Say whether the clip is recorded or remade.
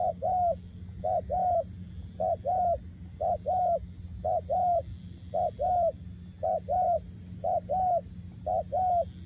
recorded